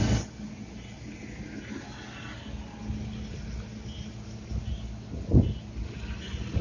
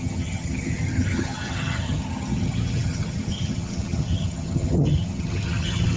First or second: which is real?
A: first